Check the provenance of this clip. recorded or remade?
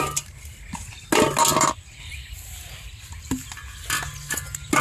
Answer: recorded